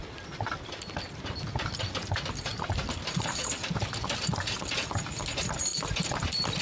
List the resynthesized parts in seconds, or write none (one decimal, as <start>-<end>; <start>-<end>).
2.5-3.4; 5.7-6.6